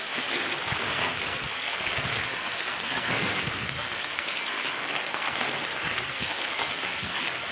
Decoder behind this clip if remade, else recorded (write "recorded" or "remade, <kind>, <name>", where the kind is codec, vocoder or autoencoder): remade, codec, SNAC